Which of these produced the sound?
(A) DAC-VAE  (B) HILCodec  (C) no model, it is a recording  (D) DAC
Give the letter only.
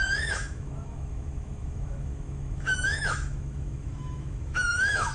A